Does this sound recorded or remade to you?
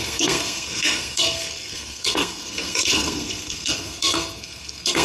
remade